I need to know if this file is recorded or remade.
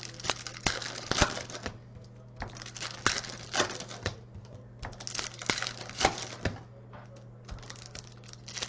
recorded